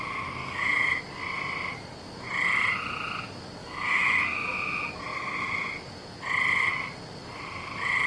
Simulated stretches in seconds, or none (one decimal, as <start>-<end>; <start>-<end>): 0.4-1.0; 3.6-4.2